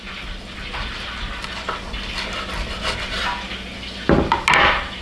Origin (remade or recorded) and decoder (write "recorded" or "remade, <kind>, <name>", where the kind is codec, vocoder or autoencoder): recorded